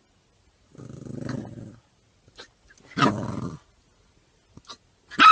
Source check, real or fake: real